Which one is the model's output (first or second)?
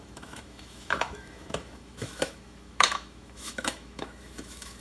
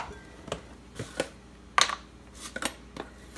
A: first